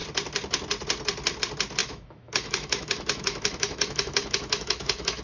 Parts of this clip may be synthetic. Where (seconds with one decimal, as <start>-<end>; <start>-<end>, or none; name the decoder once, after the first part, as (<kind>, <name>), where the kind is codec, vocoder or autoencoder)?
1.8-5.2 (autoencoder, DAC-VAE)